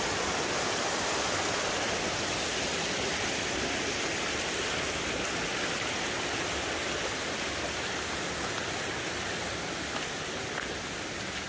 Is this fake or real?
real